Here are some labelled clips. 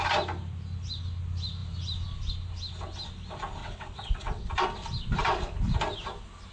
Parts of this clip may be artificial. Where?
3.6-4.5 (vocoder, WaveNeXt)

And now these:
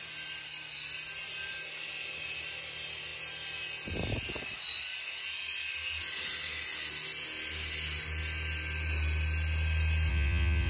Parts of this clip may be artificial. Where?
10.1-10.7 (vocoder, WaveNeXt)

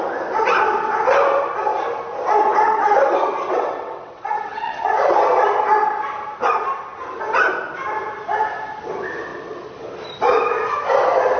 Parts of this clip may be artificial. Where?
2.5-4.9 (vocoder, WaveNeXt)

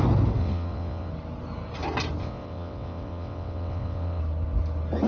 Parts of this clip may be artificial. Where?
0.4-1.1 (vocoder, WaveNeXt); 2.2-4.2

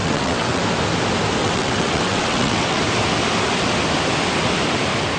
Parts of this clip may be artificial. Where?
0.0-0.6 (vocoder, WaveNeXt); 1.4-2.8

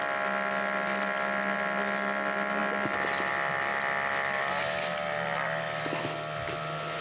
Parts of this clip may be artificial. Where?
none

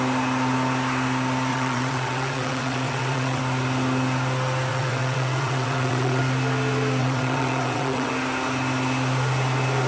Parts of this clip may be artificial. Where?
1.5-3.4 (vocoder, WaveNeXt); 4.7-6.2; 7.0-8.1